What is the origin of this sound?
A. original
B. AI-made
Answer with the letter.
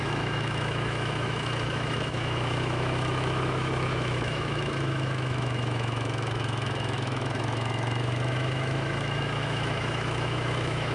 B